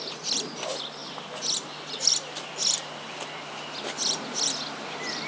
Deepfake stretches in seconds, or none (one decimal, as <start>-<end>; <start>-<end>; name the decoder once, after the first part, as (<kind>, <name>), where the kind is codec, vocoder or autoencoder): none